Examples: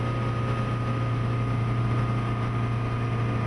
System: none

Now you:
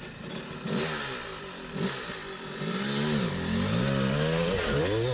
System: none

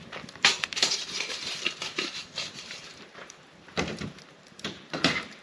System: vocoder, BigVGAN v2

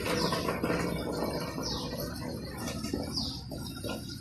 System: none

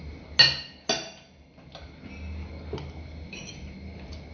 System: none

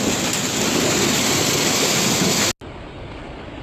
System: none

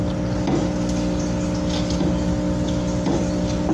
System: none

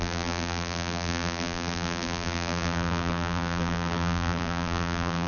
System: vocoder, BigVGAN v2